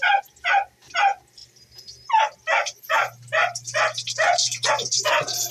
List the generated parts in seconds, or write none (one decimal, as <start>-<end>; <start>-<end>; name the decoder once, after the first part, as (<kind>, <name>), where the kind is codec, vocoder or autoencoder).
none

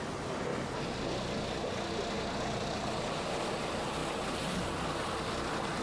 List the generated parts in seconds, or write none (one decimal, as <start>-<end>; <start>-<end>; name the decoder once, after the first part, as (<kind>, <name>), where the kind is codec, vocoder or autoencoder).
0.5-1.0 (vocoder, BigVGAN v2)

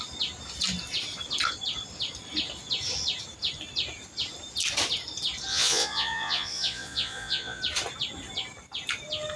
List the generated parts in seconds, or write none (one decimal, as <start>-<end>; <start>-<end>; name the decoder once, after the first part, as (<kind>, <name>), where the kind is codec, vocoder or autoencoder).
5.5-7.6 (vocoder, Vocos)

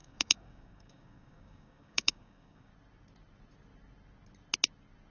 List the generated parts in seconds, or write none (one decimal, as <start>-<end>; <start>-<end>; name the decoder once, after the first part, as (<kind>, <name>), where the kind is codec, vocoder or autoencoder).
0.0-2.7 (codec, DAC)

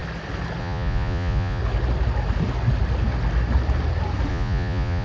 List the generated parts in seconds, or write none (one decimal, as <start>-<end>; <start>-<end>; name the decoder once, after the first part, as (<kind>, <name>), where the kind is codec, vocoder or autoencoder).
0.6-1.6 (vocoder, Vocos); 4.3-5.0